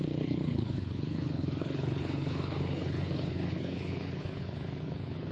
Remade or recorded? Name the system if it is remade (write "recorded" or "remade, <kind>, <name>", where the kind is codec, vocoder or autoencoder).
remade, codec, HILCodec